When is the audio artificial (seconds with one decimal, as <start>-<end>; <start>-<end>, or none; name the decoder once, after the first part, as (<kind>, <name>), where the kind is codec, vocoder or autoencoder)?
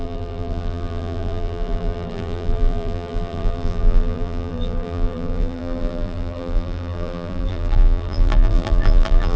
0.0-9.4 (vocoder, BigVGAN v2)